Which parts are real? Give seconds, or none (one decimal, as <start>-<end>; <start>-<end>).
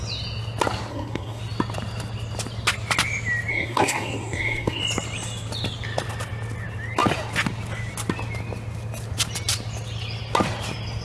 0.0-0.9; 1.4-3.5; 4.8-11.0